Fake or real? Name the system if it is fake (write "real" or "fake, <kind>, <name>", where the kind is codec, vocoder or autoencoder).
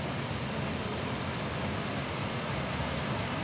real